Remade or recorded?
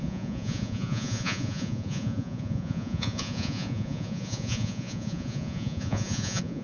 remade